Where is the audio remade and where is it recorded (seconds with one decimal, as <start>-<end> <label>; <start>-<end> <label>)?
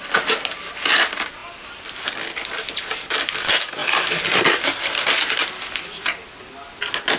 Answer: 0.0-3.8 recorded; 3.8-4.4 remade; 4.4-7.2 recorded